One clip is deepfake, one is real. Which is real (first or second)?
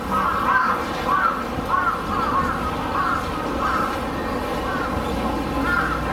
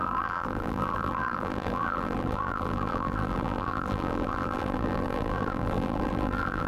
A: first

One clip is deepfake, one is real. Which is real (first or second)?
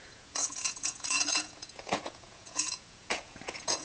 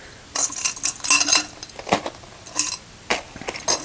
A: second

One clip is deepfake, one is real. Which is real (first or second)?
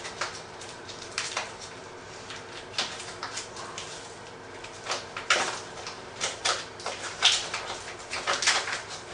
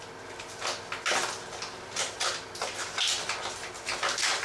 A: second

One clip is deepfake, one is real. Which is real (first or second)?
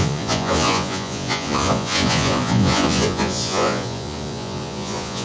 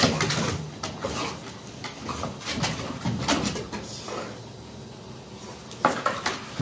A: second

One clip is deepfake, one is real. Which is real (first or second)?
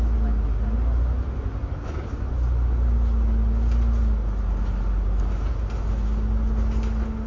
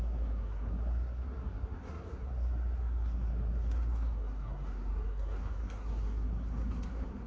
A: first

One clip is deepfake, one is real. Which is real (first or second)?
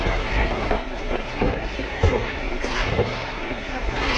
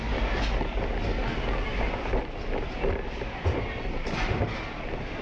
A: second